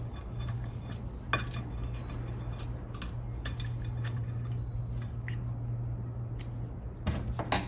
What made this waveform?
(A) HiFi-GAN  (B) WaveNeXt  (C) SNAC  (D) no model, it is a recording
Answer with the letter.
D